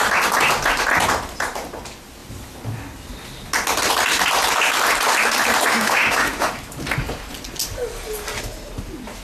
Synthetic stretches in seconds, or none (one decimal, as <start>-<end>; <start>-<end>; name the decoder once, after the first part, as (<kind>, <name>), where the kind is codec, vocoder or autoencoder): 5.7-6.5 (autoencoder, DAC-VAE)